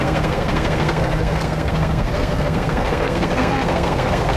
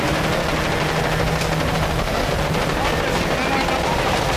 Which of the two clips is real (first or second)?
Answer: second